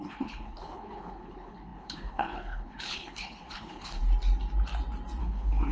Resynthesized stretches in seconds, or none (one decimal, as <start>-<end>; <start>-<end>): 0.0-4.0; 5.2-5.7